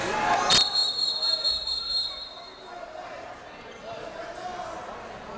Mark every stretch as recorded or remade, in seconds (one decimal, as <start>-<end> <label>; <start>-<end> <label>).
0.0-4.5 remade; 4.5-5.4 recorded